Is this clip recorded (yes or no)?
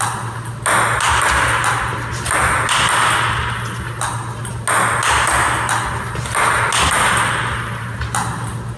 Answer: yes